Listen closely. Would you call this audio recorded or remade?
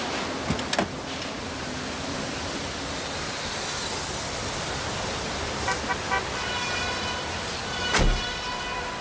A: recorded